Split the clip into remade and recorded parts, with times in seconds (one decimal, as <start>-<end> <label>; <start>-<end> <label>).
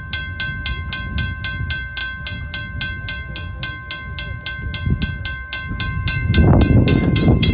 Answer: 0.0-6.9 recorded; 6.9-7.5 remade